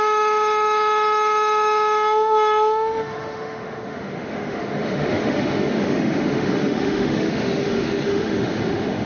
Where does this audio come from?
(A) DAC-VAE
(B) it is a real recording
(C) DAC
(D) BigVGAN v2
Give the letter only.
A